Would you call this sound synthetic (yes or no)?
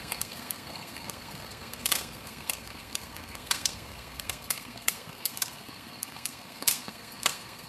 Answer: yes